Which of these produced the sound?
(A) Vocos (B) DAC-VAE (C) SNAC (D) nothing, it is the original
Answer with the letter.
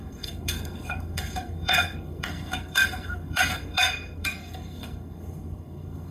C